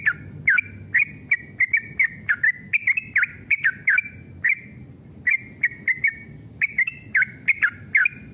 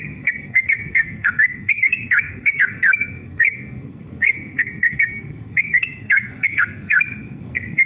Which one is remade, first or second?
second